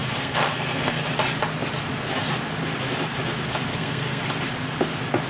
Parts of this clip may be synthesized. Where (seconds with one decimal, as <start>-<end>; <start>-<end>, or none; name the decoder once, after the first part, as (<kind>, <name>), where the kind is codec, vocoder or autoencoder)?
0.0-1.1 (codec, SNAC); 3.7-4.2